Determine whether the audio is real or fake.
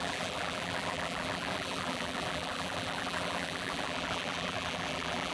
fake